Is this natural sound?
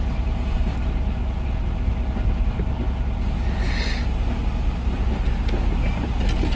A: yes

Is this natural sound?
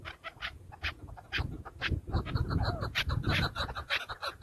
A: no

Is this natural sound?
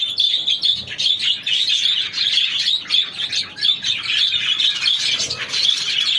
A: yes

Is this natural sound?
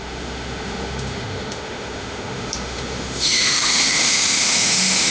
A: no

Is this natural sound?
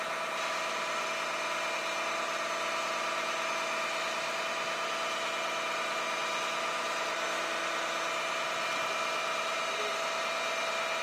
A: yes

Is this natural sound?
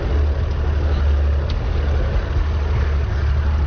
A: yes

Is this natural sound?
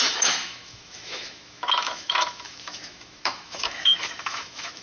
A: no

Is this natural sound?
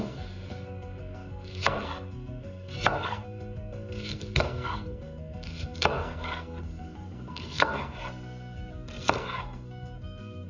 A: no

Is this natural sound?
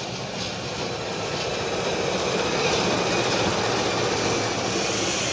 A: yes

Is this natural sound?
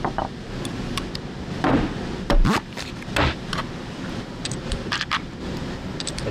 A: no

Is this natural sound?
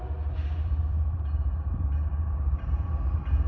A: no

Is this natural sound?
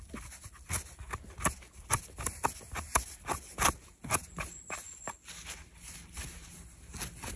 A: yes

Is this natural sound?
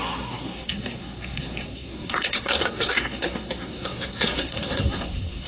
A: no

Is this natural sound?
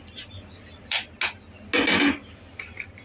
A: yes